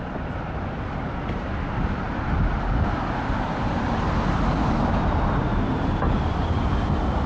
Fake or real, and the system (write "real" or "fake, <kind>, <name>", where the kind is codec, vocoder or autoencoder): real